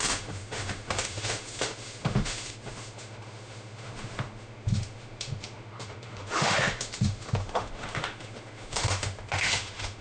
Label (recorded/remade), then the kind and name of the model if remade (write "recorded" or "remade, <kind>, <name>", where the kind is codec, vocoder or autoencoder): remade, autoencoder, DAC-VAE